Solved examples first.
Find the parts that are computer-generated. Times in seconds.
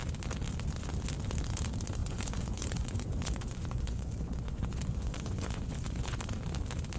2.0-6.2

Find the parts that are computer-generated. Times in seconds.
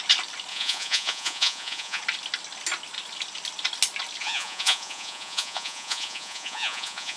0.5-2.0; 4.2-7.2